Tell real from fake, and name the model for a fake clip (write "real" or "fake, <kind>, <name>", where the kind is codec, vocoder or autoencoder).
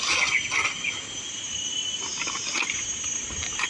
real